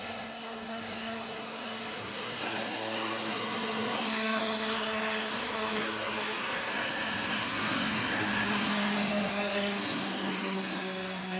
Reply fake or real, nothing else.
fake